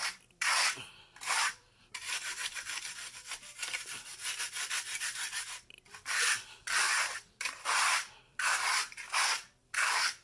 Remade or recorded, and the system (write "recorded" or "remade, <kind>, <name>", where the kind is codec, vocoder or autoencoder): remade, vocoder, BigVGAN v2